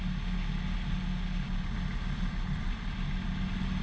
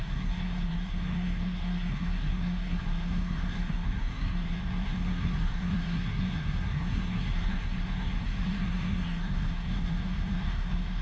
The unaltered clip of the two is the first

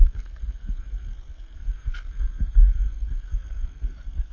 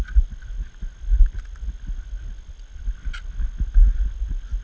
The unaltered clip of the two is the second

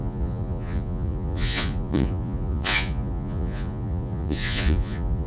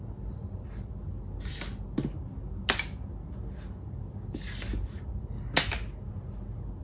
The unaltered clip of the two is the second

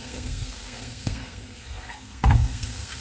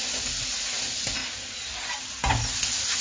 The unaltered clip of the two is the second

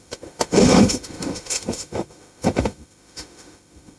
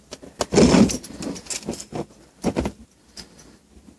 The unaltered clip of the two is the second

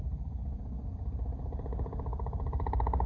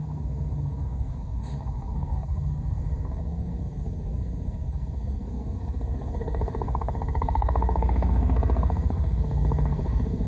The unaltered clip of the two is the first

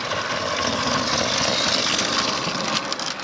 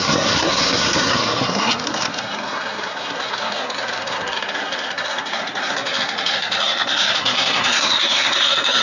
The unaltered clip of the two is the first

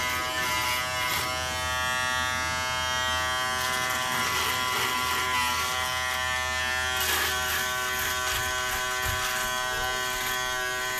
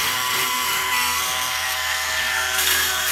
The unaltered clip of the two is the first